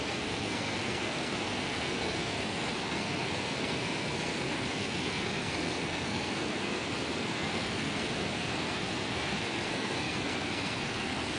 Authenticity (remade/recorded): remade